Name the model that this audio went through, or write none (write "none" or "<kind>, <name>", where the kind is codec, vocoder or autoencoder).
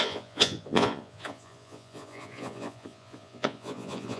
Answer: vocoder, Vocos